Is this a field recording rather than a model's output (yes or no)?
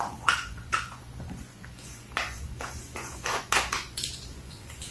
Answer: no